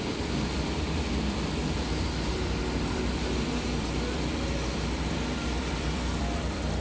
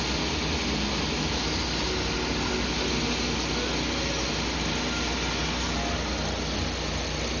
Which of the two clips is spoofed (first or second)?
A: first